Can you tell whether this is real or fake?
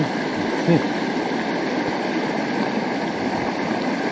real